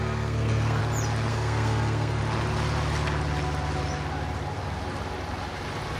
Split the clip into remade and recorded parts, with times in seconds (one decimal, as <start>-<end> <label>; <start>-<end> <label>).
0.0-0.8 remade; 0.8-1.3 recorded; 1.3-2.2 remade; 2.2-6.0 recorded